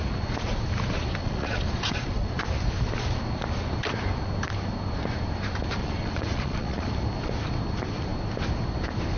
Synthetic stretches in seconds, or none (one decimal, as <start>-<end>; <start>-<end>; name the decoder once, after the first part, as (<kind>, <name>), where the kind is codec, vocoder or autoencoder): 1.2-2.4 (vocoder, Vocos); 5.8-6.9